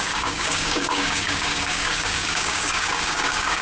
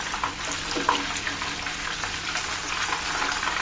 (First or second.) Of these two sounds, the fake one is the first